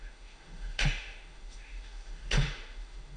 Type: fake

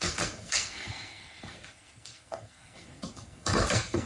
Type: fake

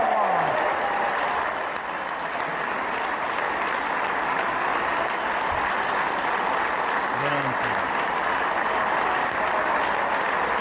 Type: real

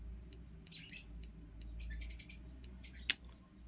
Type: real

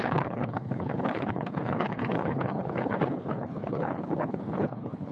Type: fake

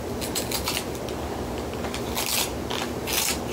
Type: real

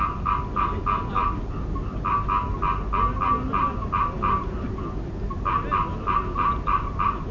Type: real